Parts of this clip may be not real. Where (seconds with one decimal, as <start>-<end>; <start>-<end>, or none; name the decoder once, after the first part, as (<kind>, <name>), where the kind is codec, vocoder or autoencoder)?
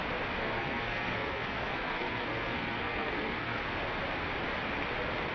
0.4-3.6 (codec, SNAC)